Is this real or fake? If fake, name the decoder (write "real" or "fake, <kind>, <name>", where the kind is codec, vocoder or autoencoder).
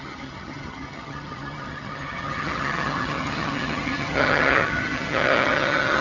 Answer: fake, vocoder, HiFi-GAN